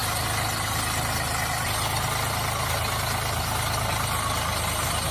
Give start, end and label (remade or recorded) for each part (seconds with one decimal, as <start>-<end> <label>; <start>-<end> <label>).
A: 0.0-5.1 recorded